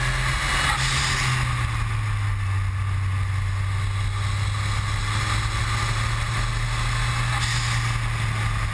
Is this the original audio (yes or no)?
yes